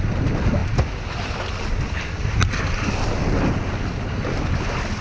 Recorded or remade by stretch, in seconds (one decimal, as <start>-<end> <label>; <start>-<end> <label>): 0.0-5.0 recorded